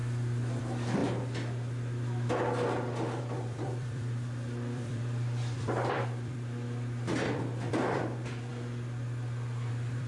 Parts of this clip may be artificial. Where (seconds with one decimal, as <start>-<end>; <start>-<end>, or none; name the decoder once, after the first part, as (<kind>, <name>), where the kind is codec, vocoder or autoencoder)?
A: 0.6-1.0 (vocoder, BigVGAN v2); 3.2-8.5; 9.7-10.1